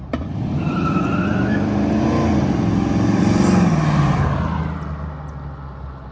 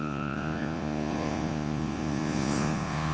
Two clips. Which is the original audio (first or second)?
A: first